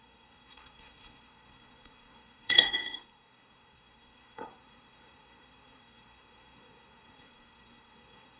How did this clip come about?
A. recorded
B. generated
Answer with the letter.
B